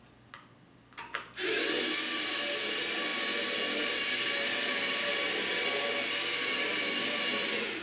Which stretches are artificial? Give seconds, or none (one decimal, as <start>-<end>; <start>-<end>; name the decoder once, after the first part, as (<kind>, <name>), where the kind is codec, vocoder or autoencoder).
none